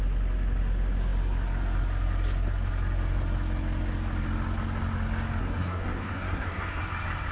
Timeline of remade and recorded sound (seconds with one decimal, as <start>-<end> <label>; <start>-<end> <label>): 0.0-5.4 recorded; 5.4-6.8 remade; 6.8-7.3 recorded